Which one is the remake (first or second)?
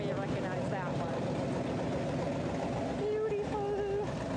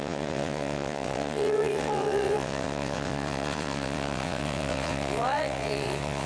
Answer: second